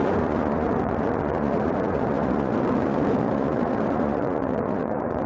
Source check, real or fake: fake